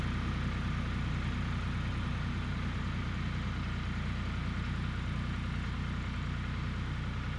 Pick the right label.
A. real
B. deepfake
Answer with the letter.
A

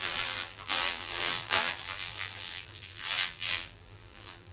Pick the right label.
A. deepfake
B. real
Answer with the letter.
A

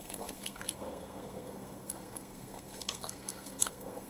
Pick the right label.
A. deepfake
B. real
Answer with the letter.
A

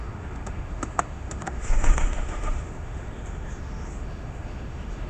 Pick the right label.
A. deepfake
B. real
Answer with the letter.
A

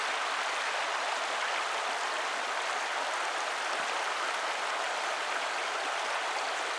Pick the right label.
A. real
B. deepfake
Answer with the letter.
A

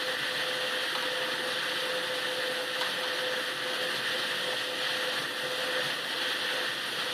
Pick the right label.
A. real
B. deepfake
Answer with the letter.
A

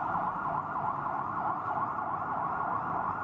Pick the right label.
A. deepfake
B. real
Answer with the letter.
B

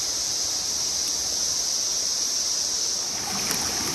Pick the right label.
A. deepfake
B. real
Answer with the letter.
B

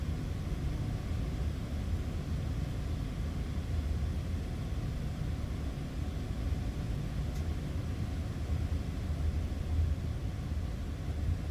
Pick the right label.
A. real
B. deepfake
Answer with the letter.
A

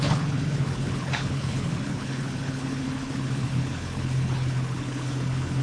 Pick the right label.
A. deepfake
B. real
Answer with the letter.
A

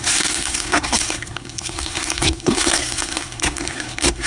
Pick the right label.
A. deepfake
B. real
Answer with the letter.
A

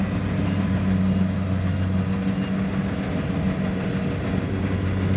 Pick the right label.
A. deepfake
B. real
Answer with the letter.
B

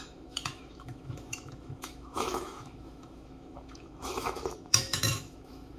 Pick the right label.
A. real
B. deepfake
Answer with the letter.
B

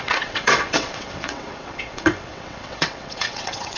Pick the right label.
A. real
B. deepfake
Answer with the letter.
B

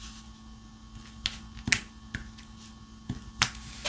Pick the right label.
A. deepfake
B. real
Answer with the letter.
B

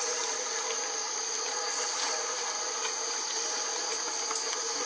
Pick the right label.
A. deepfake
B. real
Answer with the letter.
B